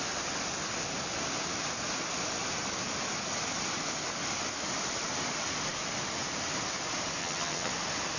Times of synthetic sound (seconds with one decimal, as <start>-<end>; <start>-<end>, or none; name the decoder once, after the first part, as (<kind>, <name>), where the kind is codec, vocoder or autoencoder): 7.2-7.7 (vocoder, HiFi-GAN)